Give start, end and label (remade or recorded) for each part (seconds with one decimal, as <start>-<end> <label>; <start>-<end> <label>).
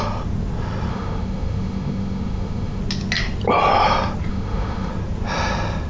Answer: 0.0-0.9 recorded; 0.9-2.8 remade; 2.8-4.3 recorded; 4.3-4.9 remade; 4.9-5.9 recorded